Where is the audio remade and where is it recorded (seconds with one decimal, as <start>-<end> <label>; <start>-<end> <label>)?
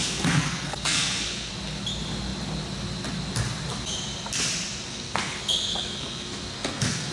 0.0-1.5 remade; 1.5-4.9 recorded; 4.9-7.1 remade